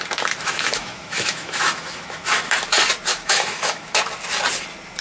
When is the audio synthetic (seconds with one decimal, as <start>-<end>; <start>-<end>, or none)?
0.4-2.5; 3.1-4.0